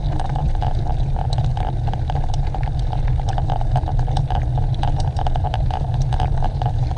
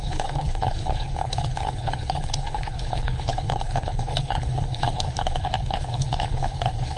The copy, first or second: second